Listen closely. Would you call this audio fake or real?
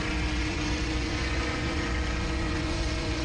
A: fake